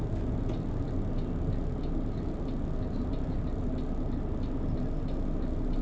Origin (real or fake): real